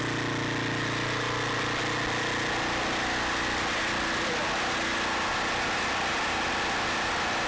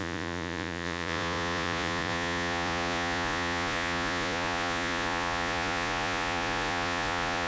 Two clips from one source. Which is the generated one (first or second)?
second